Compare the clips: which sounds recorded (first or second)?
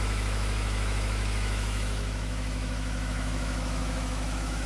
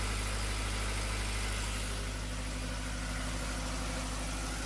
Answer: second